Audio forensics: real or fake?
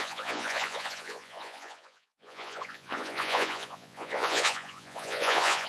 fake